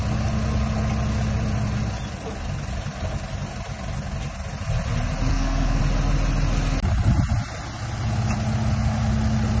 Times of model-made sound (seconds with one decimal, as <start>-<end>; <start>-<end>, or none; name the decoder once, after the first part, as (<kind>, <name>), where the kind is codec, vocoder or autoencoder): 5.3-5.8 (codec, SNAC)